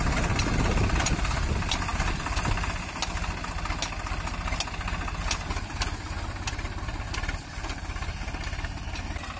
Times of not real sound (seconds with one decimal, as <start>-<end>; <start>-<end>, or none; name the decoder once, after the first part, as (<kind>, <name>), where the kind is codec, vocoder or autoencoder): none